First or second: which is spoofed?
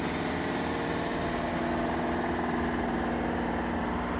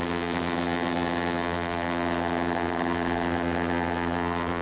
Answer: second